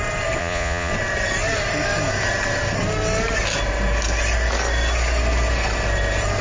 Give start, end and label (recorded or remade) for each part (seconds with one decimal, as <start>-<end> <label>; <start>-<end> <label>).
0.0-0.4 recorded; 0.4-0.9 remade; 0.9-6.4 recorded

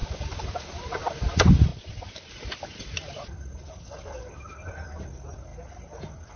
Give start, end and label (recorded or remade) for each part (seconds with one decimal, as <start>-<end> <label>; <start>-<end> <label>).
0.0-6.4 recorded

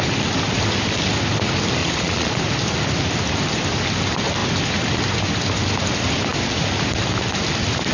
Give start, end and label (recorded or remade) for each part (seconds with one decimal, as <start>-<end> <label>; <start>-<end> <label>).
0.0-1.8 recorded; 1.8-2.4 remade; 2.4-7.9 recorded

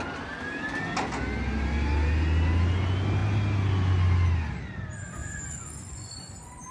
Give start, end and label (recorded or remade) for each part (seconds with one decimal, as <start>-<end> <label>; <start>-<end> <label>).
0.0-5.2 recorded; 5.2-6.7 remade

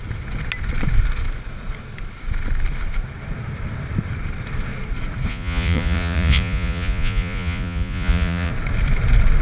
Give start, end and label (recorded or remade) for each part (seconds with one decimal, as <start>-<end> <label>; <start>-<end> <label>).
0.0-5.3 recorded; 5.3-8.5 remade; 8.5-9.4 recorded

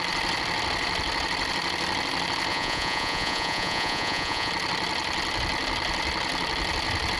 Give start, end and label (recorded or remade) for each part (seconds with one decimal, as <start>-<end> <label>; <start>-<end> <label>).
0.0-2.5 recorded; 2.5-4.5 remade; 4.5-7.2 recorded